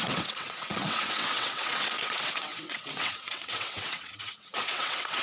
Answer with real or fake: fake